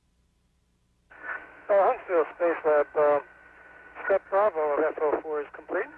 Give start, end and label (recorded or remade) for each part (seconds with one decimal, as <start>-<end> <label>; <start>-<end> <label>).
0.0-1.4 recorded; 1.4-3.2 remade; 3.2-6.0 recorded